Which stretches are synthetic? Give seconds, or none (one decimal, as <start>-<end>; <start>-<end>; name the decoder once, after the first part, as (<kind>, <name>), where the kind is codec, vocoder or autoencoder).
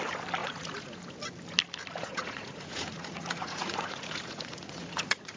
0.4-1.0 (vocoder, Vocos); 2.0-5.4